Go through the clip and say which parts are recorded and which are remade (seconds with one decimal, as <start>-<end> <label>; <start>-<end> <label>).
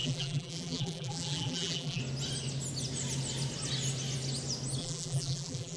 0.0-2.0 remade; 2.0-4.8 recorded; 4.8-5.8 remade